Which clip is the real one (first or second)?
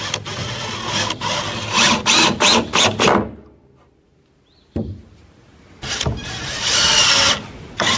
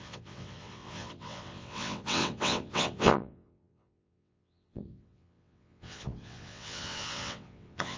first